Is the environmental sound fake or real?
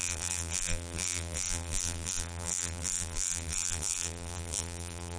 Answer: fake